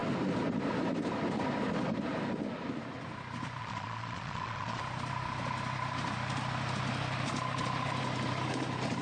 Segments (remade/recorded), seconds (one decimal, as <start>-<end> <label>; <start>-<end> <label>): 0.0-3.6 recorded; 3.6-4.8 remade; 4.8-9.0 recorded